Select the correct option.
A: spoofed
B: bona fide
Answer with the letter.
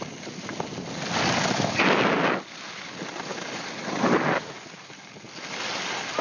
B